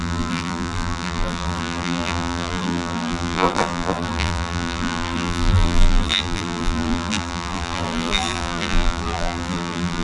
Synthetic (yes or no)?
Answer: yes